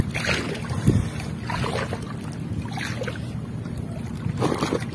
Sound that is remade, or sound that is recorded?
recorded